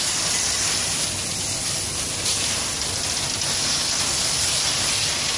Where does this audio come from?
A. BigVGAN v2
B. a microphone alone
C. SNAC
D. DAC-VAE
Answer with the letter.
B